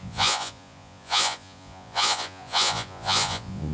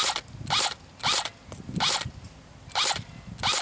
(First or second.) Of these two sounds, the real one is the second